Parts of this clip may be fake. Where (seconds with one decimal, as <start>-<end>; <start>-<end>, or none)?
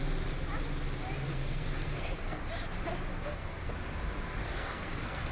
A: 1.3-2.4; 3.1-3.7; 4.4-5.3